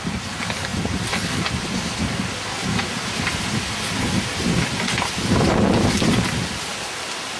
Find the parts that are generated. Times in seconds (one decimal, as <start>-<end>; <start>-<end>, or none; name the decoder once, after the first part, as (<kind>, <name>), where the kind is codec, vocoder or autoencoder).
none